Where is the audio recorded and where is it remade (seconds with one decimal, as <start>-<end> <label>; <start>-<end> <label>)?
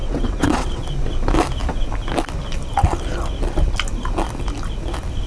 0.0-0.8 remade; 0.8-5.3 recorded